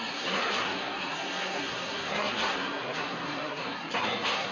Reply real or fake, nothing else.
fake